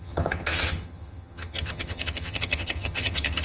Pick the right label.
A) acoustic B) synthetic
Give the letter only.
B